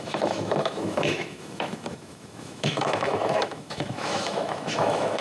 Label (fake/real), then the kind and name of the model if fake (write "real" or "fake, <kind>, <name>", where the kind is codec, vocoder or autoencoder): fake, autoencoder, DAC-VAE